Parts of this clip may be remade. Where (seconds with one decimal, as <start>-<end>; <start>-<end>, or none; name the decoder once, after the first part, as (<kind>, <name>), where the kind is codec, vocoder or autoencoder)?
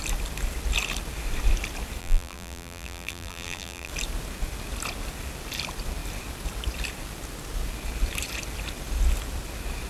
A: 2.0-3.9 (vocoder, BigVGAN v2)